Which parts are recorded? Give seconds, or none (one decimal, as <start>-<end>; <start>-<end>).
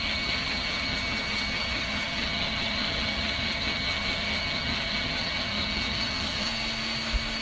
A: 6.5-7.4